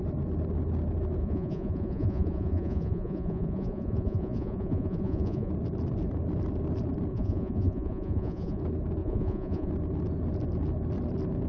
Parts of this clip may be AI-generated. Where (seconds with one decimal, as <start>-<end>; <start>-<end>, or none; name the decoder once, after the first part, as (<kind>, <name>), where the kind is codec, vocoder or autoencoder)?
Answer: 1.2-5.5 (vocoder, Vocos); 7.1-8.6; 9.0-9.7